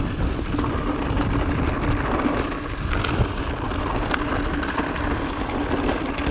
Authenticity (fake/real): real